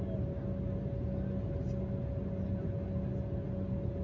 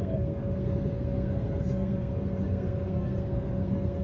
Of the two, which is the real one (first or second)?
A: first